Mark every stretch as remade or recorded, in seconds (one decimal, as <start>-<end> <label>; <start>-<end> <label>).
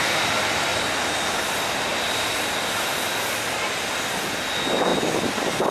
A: 0.0-5.7 recorded